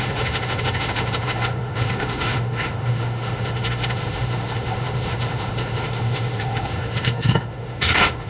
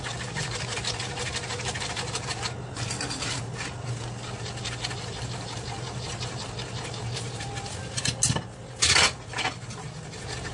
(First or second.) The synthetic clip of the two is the first